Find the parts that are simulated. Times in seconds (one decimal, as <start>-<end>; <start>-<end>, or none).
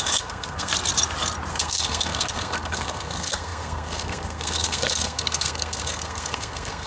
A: 0.0-0.7; 1.5-6.9